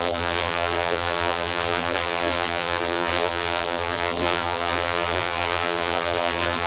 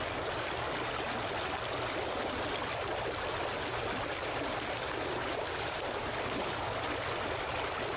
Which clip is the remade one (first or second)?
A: first